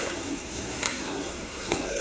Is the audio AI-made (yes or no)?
yes